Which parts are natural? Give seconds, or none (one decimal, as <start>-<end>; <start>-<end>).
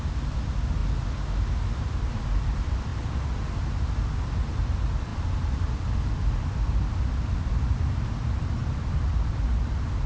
0.8-1.8; 2.9-4.5